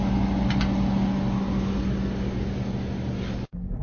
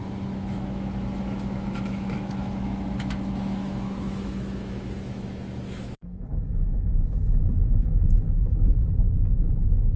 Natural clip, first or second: first